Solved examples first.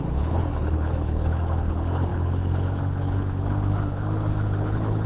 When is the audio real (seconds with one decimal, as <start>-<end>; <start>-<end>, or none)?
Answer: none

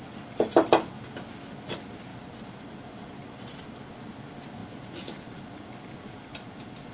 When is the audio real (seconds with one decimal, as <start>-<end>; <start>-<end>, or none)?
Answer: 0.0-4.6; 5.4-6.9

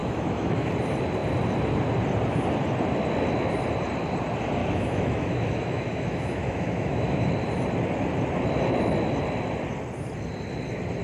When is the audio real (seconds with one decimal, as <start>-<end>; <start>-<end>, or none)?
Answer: 0.7-4.6; 7.3-11.0

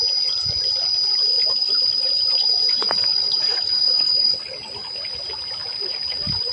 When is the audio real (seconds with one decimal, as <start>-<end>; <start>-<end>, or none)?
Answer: 0.0-1.6; 3.8-5.6

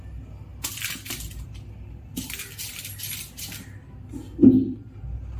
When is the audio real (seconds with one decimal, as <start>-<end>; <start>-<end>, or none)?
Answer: 0.0-5.4

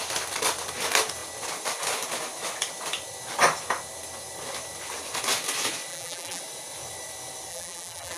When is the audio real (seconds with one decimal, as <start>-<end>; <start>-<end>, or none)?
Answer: 0.0-5.9; 6.4-7.5

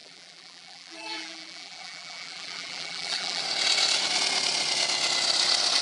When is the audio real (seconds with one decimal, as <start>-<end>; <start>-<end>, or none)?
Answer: 3.4-5.8